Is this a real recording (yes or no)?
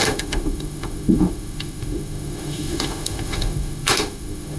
no